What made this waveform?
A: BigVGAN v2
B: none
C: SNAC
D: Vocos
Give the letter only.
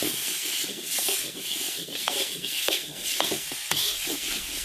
C